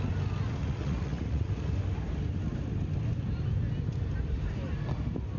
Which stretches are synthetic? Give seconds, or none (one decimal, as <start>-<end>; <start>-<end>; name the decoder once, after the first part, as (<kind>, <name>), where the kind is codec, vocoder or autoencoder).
0.6-1.5 (vocoder, Vocos)